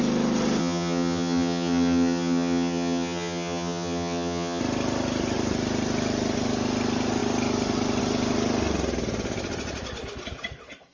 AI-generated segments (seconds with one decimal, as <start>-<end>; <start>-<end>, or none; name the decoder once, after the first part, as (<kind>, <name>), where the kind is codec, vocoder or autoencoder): 0.6-4.6 (vocoder, HiFi-GAN)